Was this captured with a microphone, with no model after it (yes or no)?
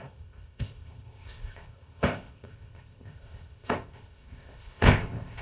no